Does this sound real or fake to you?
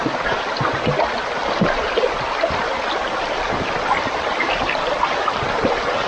real